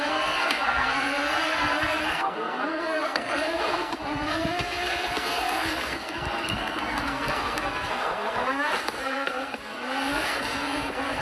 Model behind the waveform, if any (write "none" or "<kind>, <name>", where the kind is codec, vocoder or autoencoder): codec, SNAC